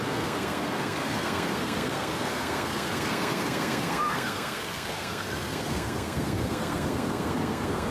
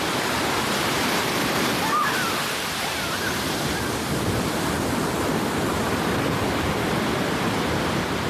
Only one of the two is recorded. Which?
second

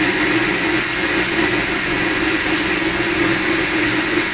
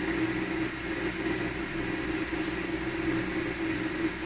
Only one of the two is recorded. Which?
second